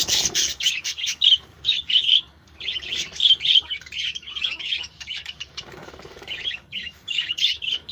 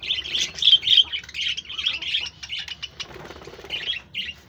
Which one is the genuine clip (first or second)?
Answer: second